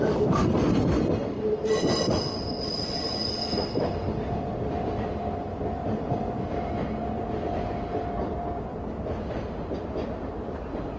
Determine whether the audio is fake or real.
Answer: real